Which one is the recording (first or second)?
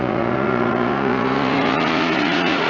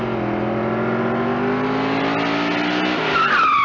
second